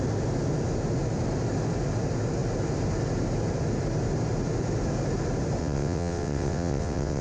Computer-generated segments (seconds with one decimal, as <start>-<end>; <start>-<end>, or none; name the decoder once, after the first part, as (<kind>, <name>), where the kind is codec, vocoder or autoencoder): 5.6-7.2 (vocoder, WaveNeXt)